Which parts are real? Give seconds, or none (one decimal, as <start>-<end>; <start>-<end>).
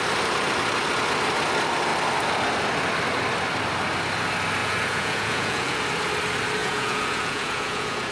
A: 0.0-4.6; 5.8-6.6